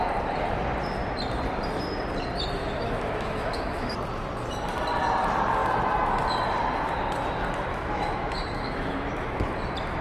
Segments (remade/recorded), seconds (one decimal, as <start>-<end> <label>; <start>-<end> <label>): 0.0-2.6 recorded; 2.6-3.9 remade; 3.9-7.7 recorded; 7.7-9.4 remade; 9.4-10.0 recorded

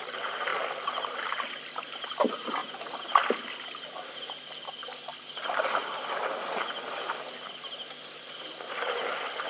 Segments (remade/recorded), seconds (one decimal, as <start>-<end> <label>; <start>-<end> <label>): 0.0-9.5 recorded

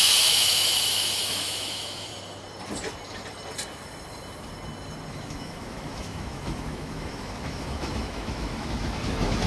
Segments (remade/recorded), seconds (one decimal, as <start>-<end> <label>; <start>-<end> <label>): 0.0-2.1 remade; 2.1-5.1 recorded; 5.1-9.5 remade

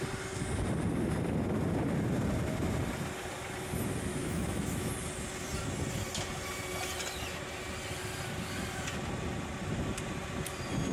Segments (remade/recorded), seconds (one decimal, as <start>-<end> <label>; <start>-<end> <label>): 0.0-4.1 recorded; 4.1-4.9 remade; 4.9-10.9 recorded

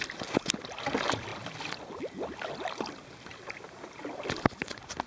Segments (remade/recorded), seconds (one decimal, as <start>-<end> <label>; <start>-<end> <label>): 0.0-5.1 recorded

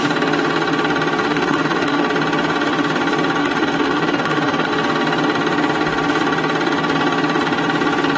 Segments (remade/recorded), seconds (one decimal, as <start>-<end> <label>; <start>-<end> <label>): 0.0-1.2 recorded; 1.2-2.0 remade; 2.0-3.4 recorded; 3.4-4.7 remade; 4.7-8.2 recorded